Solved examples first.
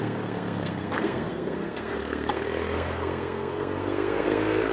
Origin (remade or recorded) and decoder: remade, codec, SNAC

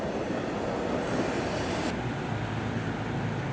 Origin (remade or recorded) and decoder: recorded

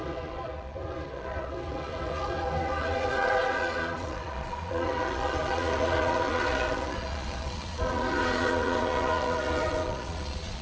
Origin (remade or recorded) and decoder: remade, vocoder, Vocos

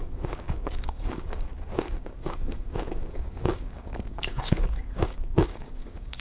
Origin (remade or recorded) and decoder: remade, codec, DAC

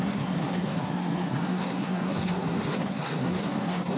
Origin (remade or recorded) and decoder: remade, codec, SNAC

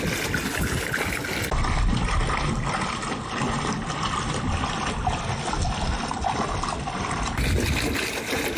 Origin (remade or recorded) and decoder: recorded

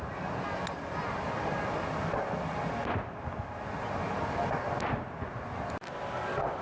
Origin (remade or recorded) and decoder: recorded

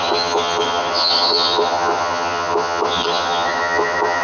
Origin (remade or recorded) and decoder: remade, vocoder, HiFi-GAN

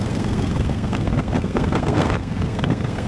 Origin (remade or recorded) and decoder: remade, codec, SNAC